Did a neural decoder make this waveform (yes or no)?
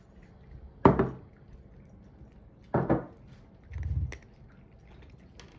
no